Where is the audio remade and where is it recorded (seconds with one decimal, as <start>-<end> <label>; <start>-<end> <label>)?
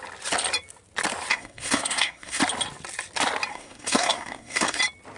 0.0-1.3 recorded; 1.3-2.4 remade; 2.4-3.5 recorded; 3.5-4.8 remade; 4.8-5.2 recorded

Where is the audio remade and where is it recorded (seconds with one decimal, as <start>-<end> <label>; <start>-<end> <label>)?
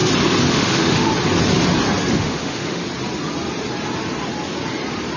0.0-0.5 recorded; 0.5-1.1 remade; 1.1-2.1 recorded; 2.1-2.8 remade; 2.8-5.2 recorded